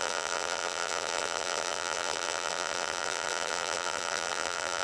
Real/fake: fake